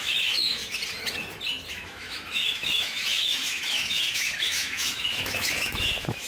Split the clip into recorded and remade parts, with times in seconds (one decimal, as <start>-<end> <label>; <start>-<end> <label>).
0.0-0.6 remade; 0.6-1.7 recorded; 1.7-6.3 remade